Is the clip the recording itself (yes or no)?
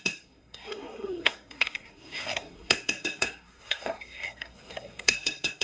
no